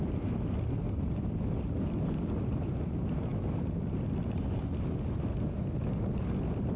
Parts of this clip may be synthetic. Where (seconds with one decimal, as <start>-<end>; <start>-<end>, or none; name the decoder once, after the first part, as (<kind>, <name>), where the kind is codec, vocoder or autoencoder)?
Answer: none